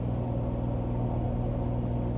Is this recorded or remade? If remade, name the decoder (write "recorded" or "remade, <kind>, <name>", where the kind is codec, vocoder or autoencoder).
recorded